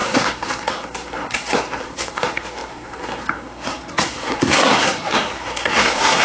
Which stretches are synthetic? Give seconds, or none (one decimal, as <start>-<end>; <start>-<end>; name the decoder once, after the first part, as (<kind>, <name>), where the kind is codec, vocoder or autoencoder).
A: 0.0-6.2 (codec, SNAC)